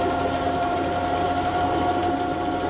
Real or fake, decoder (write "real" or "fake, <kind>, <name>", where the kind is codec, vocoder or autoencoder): real